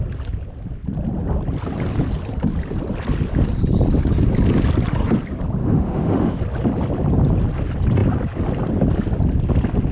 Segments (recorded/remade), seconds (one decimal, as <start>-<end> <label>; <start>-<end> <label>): 0.0-5.6 recorded; 5.6-6.4 remade; 6.4-9.9 recorded